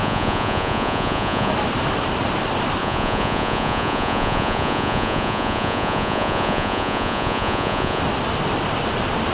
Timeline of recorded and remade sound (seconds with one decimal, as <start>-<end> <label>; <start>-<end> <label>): 0.0-1.5 remade; 1.5-2.8 recorded; 2.8-8.0 remade; 8.0-9.3 recorded